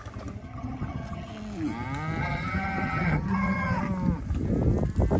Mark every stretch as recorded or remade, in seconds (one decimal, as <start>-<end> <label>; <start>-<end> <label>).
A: 0.0-0.4 recorded; 0.4-1.3 remade; 1.3-2.2 recorded; 2.2-3.8 remade; 3.8-5.2 recorded